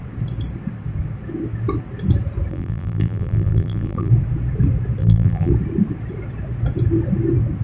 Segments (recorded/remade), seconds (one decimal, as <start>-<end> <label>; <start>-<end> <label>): 0.0-2.5 recorded; 2.5-4.1 remade; 4.1-5.0 recorded; 5.0-5.5 remade; 5.5-7.6 recorded